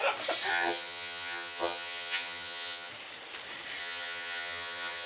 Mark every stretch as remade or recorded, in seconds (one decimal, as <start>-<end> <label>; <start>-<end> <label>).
0.0-0.5 recorded; 0.5-2.9 remade; 2.9-3.8 recorded; 3.8-5.1 remade